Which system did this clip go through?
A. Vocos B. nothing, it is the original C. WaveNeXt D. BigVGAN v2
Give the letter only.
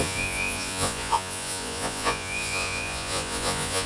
A